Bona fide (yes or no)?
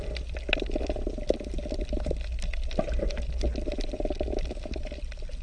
yes